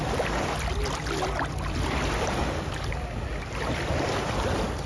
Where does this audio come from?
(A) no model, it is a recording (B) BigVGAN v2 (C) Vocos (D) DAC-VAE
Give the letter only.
A